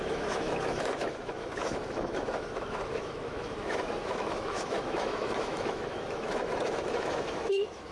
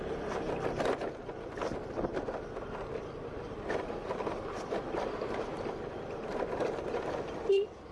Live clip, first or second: second